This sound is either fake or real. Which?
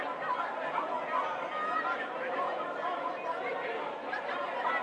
real